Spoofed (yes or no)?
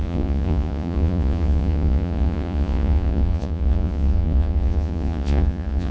yes